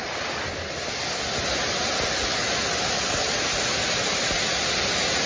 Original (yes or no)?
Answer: yes